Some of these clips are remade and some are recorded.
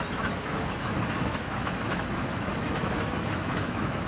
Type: remade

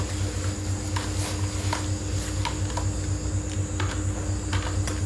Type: recorded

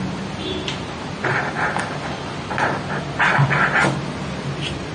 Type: recorded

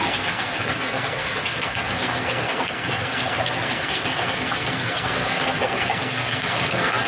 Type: remade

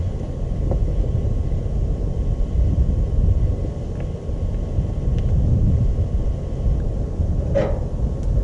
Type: recorded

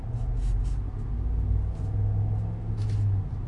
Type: recorded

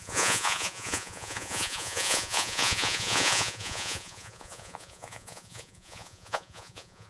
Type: remade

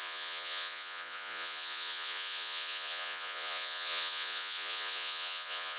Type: remade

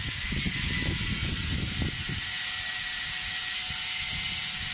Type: recorded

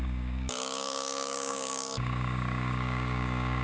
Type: remade